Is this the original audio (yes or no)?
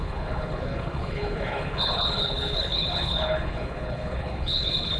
no